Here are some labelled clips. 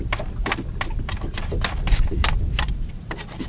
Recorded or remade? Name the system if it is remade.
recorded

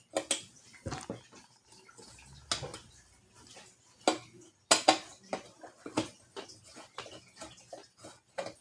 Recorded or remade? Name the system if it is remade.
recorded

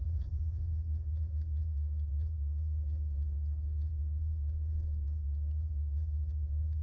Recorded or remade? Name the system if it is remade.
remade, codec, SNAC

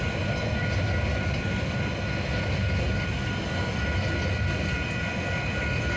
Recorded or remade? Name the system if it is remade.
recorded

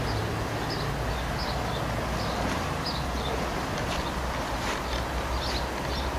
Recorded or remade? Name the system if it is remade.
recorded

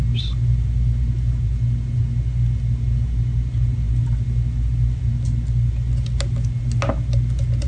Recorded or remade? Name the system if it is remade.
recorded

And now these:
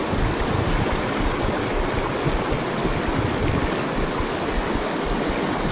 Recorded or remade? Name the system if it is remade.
recorded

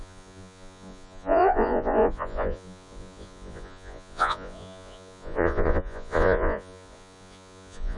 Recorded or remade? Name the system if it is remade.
remade, vocoder, Vocos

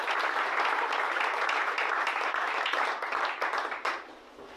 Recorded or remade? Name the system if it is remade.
recorded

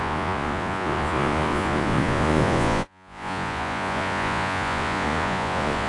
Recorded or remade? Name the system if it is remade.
remade, vocoder, Vocos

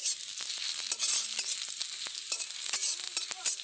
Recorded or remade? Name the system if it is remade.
recorded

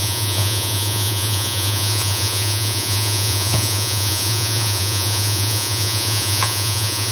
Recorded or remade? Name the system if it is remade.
remade, vocoder, Vocos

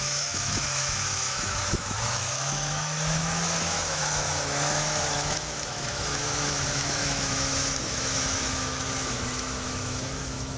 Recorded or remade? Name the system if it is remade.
remade, autoencoder, DAC-VAE